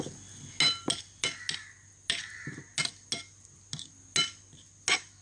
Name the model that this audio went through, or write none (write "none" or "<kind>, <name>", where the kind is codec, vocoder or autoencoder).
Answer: none